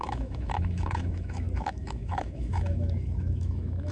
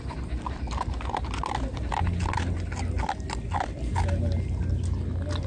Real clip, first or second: second